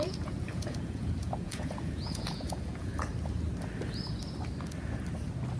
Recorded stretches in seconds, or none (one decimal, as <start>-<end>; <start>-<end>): 2.9-5.6